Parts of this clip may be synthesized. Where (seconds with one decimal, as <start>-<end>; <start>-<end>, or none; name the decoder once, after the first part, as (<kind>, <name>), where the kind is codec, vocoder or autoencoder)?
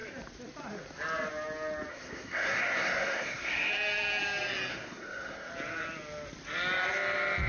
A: 1.9-3.7 (codec, SNAC); 4.7-5.5